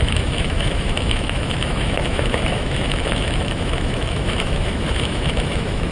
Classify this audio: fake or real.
fake